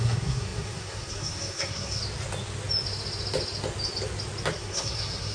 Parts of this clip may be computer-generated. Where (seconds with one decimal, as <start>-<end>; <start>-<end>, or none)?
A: 0.0-2.0; 4.5-5.3